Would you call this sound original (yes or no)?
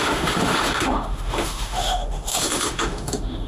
no